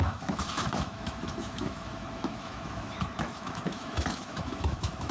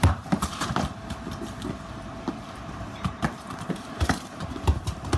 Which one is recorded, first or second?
second